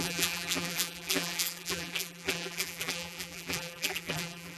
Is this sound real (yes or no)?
no